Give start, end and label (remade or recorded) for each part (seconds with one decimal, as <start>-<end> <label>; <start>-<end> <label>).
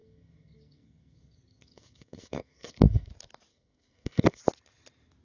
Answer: 0.0-3.1 remade; 3.1-3.5 recorded; 3.5-4.4 remade; 4.4-5.2 recorded